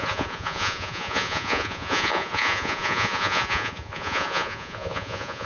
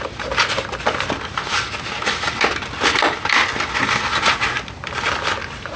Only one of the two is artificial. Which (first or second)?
first